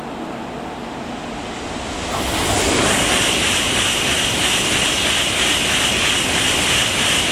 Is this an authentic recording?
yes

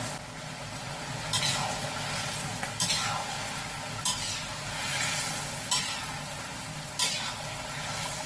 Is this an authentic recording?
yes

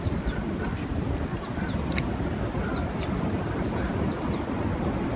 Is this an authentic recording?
yes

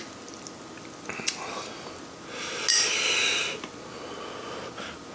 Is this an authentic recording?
yes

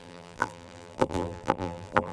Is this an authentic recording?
no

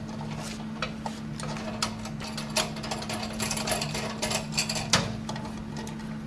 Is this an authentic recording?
yes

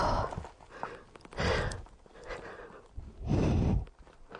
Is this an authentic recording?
yes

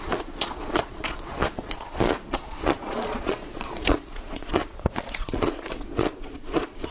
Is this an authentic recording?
no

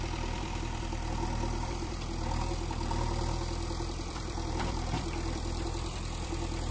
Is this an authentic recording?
no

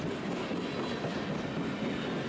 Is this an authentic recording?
yes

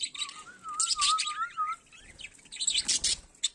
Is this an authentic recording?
yes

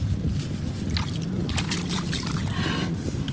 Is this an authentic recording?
yes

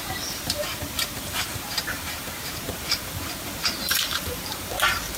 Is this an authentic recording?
no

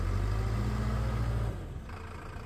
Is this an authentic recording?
yes